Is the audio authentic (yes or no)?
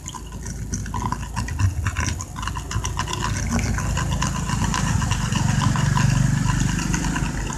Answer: yes